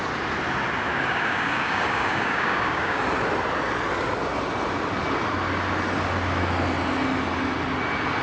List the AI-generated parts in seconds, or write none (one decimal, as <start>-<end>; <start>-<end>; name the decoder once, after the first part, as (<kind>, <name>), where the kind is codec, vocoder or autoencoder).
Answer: 0.9-3.0 (codec, DAC)